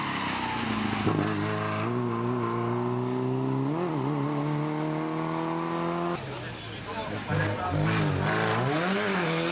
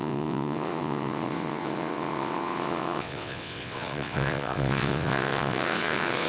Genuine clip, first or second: first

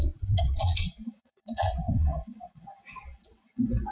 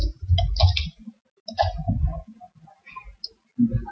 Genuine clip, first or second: second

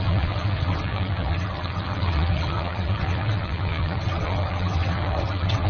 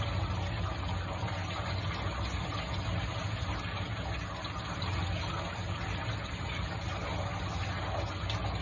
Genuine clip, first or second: second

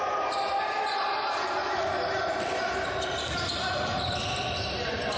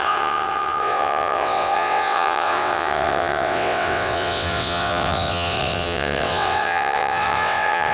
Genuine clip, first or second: first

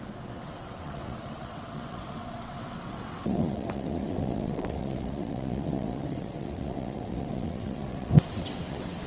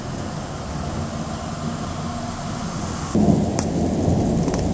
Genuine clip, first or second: second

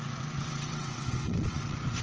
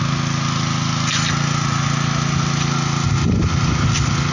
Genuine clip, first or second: second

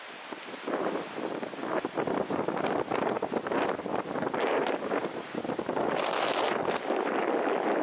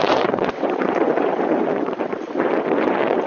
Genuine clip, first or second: first